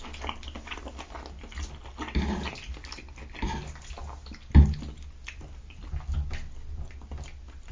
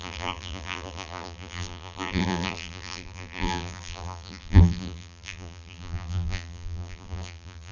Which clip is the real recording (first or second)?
first